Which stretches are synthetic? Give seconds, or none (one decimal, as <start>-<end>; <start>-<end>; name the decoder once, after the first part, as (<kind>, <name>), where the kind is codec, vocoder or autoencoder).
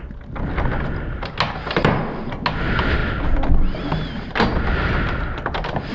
none